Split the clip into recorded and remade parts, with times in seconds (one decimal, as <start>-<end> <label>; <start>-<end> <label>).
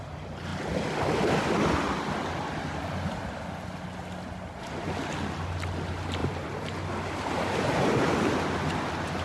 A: 0.0-6.2 recorded; 6.2-8.4 remade; 8.4-9.2 recorded